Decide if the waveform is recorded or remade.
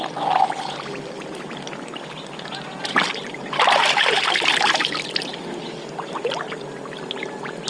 recorded